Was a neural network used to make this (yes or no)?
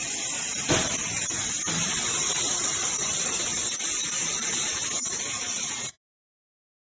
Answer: no